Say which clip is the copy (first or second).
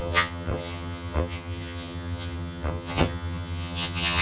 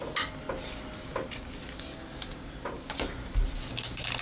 first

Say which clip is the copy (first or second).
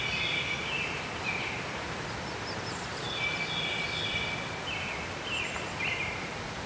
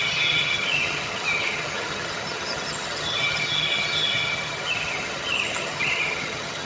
second